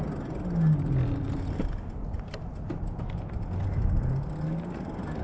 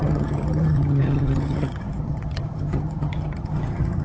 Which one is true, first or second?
first